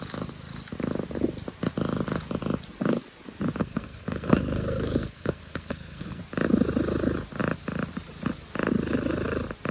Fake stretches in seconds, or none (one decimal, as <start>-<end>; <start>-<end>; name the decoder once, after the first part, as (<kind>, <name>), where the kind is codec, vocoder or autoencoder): 3.6-6.2 (codec, SNAC)